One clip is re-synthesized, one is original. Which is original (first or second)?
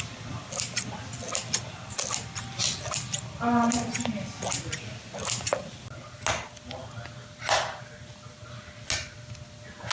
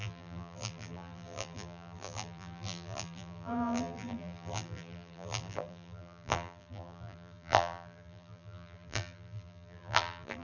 first